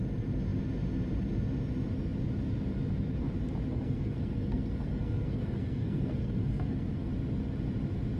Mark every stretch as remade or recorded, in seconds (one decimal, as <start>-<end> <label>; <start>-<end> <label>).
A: 0.0-3.7 recorded; 3.7-7.1 remade; 7.1-8.2 recorded